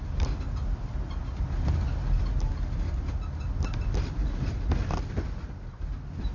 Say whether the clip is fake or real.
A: real